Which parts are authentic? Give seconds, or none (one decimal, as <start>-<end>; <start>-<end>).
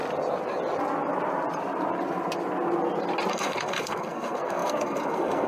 0.0-3.3